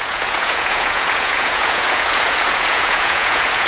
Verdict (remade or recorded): remade